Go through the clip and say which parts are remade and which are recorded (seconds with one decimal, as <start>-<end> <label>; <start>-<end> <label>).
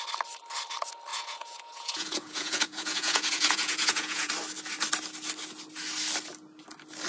0.0-1.1 recorded; 1.1-4.3 remade; 4.3-7.1 recorded